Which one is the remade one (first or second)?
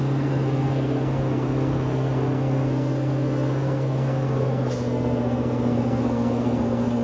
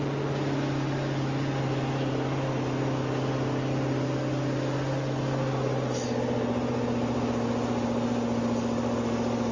first